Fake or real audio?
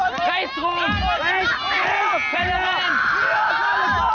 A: real